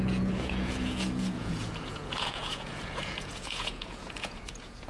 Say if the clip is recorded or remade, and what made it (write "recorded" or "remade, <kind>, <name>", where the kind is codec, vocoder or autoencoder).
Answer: remade, vocoder, Vocos